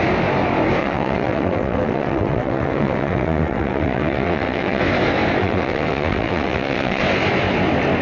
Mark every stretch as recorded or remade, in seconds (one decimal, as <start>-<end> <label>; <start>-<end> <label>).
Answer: 0.0-0.8 recorded; 0.8-4.8 remade; 4.8-5.4 recorded; 5.4-7.0 remade; 7.0-8.0 recorded